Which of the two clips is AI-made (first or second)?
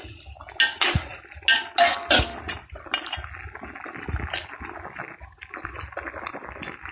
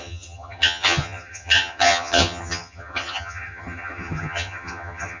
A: second